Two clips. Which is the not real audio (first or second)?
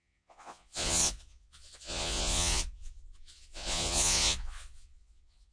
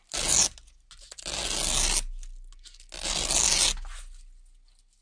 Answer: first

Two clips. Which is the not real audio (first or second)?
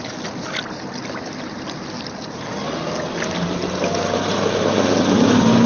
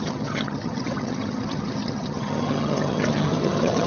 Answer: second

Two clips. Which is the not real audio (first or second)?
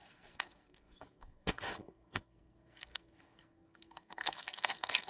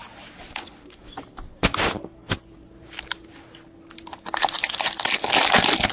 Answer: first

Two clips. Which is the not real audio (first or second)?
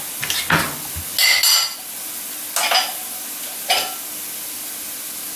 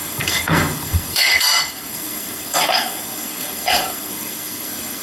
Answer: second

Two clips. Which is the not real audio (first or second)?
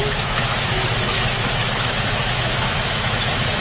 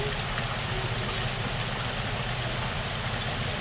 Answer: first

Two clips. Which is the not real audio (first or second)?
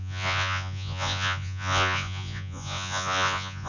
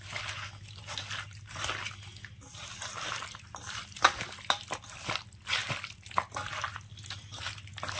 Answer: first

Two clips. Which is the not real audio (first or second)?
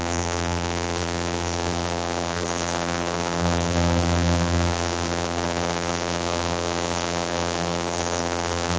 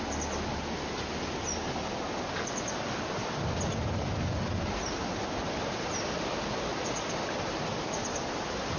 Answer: first